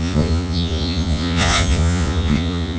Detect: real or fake fake